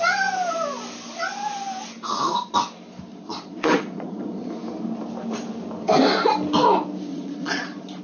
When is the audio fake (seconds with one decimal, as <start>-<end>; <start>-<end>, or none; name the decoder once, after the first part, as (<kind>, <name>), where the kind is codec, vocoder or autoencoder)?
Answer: 3.1-4.5 (vocoder, Vocos); 7.1-8.0